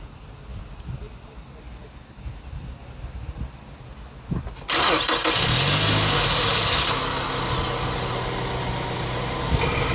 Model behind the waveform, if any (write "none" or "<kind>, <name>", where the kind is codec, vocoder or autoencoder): none